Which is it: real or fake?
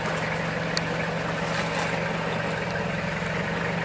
real